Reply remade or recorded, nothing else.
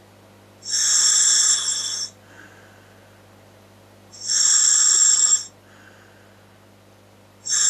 recorded